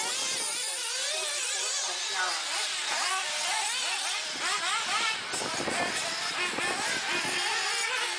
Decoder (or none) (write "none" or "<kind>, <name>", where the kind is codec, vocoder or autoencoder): none